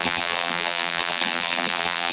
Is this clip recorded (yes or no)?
no